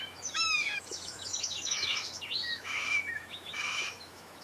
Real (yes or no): no